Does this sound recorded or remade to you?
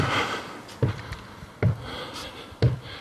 recorded